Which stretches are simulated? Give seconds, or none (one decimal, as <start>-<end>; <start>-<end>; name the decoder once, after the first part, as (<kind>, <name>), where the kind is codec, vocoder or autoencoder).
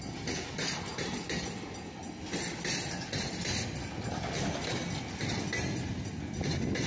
none